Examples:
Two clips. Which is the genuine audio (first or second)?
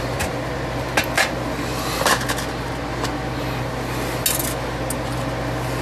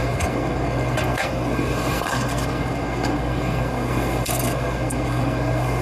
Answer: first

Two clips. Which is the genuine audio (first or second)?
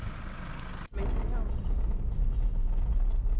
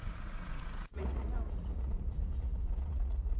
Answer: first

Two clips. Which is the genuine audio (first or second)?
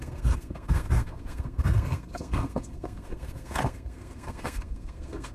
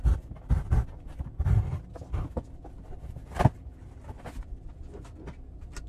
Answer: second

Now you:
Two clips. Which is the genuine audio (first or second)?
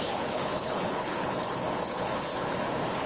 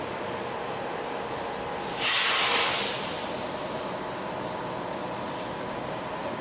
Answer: second